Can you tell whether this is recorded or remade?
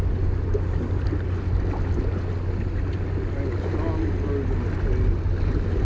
recorded